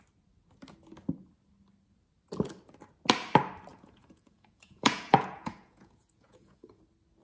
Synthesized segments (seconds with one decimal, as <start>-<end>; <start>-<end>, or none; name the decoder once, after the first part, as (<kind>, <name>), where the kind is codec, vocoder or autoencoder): 3.7-6.8 (vocoder, Vocos)